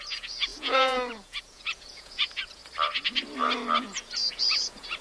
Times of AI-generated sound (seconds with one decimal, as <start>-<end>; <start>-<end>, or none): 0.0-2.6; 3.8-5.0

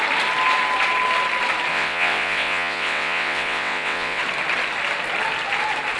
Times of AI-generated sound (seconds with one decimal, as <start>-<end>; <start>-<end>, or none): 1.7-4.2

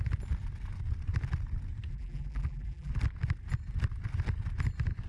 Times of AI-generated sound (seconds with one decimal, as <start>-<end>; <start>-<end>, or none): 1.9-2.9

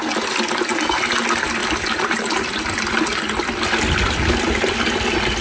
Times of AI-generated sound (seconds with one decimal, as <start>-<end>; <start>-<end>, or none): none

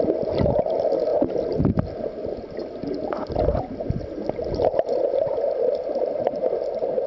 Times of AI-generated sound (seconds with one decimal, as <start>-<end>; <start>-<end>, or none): none

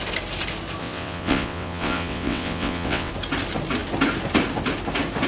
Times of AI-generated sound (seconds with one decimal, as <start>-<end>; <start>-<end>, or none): 0.8-3.1

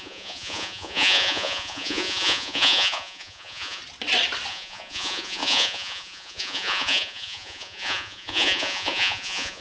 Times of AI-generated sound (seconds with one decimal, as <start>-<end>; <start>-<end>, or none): 0.0-3.8; 4.5-9.6

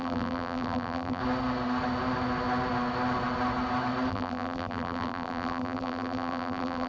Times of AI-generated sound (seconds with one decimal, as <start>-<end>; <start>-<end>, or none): 0.0-1.2; 4.1-6.9